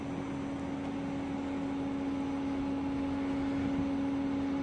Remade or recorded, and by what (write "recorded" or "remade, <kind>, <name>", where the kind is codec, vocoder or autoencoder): recorded